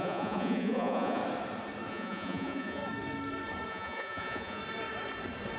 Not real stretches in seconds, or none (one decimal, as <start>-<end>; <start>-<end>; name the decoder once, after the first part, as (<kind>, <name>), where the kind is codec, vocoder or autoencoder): 0.0-1.2 (vocoder, Vocos); 1.9-2.8; 3.7-4.6